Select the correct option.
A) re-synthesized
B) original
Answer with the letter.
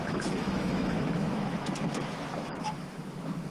A